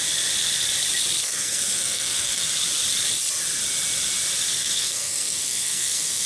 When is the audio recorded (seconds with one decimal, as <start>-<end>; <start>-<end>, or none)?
0.0-1.2; 2.5-4.6